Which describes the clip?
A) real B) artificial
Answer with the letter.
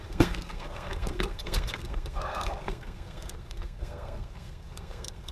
B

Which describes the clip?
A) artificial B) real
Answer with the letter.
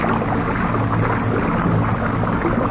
B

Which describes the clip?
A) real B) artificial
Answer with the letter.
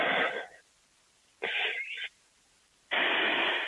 A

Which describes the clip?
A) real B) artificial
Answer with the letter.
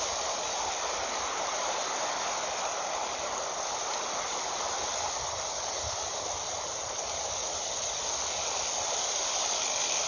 A